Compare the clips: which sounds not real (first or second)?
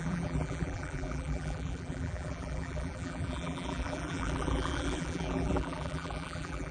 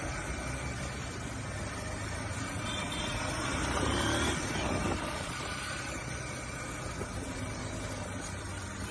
first